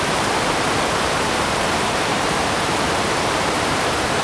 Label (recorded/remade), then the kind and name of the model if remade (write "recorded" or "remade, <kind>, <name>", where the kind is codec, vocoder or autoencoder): remade, vocoder, BigVGAN v2